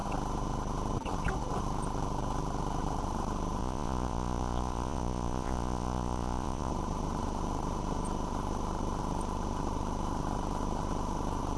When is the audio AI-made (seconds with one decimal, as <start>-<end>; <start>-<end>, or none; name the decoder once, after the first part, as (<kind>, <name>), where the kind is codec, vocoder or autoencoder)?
3.6-6.7 (vocoder, Vocos)